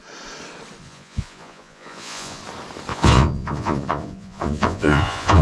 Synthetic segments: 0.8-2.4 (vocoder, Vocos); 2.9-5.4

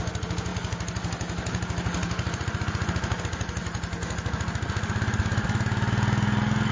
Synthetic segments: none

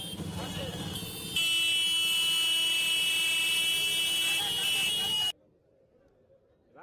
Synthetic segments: none

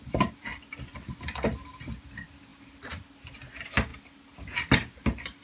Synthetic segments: 0.0-2.5 (vocoder, BigVGAN v2); 3.5-3.9